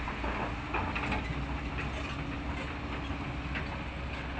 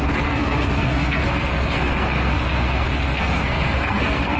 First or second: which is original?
first